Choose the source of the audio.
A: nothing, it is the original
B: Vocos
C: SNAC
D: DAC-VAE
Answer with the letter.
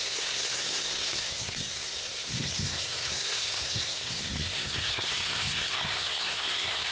C